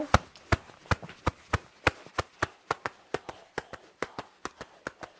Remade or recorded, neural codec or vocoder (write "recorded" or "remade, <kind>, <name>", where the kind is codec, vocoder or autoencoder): recorded